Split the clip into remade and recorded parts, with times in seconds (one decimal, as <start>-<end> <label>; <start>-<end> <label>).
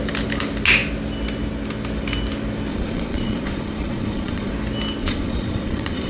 0.0-2.7 recorded; 2.7-4.5 remade; 4.5-5.0 recorded; 5.0-6.1 remade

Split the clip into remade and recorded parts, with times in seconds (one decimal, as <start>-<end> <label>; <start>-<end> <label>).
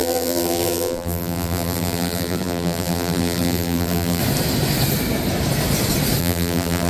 0.0-4.2 remade; 4.2-6.2 recorded; 6.2-6.9 remade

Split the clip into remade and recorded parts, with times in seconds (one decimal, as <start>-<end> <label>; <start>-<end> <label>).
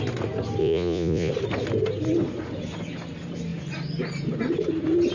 0.0-0.6 recorded; 0.6-1.3 remade; 1.3-5.1 recorded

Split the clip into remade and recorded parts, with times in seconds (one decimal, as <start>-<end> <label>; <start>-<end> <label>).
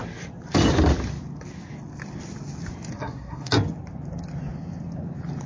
0.0-2.9 recorded; 2.9-3.5 remade; 3.5-5.5 recorded